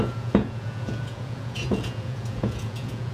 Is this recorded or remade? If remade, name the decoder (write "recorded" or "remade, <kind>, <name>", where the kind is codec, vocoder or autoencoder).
remade, vocoder, Vocos